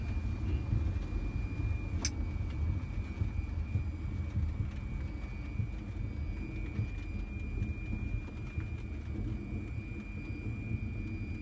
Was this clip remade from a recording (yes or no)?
no